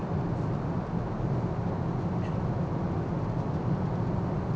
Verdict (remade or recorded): recorded